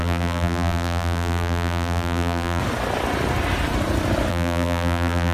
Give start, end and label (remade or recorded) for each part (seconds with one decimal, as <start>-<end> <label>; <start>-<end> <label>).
0.0-2.6 remade; 2.6-4.3 recorded; 4.3-5.3 remade